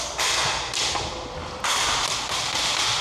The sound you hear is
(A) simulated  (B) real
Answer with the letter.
B